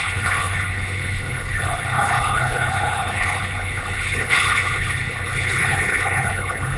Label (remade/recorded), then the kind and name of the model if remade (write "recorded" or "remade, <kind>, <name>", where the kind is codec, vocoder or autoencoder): remade, codec, HILCodec